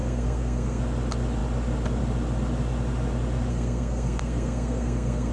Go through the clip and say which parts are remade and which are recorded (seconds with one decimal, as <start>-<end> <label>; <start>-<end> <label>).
0.0-0.8 remade; 0.8-3.5 recorded; 3.5-5.3 remade